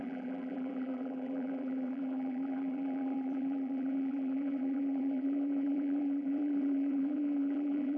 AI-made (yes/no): yes